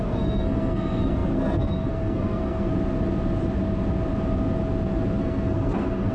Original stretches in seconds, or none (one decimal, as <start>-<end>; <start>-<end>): 2.7-5.2